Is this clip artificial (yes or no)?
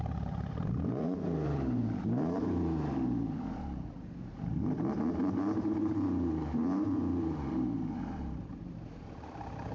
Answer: yes